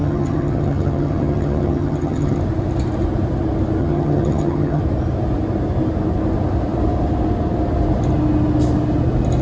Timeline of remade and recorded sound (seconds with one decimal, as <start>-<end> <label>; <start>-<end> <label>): 0.0-2.4 remade; 2.4-3.8 recorded; 3.8-4.8 remade; 4.8-9.4 recorded